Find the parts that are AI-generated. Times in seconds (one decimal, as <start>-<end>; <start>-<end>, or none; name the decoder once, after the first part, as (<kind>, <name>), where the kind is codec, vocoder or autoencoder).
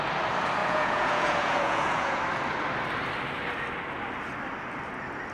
0.6-2.2 (vocoder, Vocos)